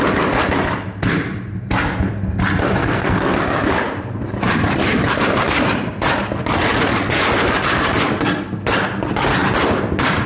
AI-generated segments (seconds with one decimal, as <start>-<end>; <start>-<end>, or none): 2.8-3.4